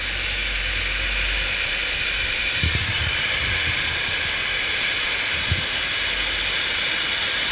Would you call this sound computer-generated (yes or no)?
no